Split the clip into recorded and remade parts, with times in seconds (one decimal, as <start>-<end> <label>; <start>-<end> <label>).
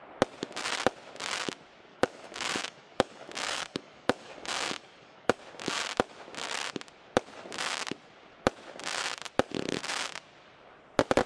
0.0-1.9 recorded; 1.9-5.4 remade; 5.4-11.3 recorded